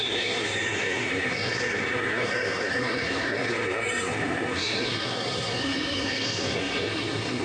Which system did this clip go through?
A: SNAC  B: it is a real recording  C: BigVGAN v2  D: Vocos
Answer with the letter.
A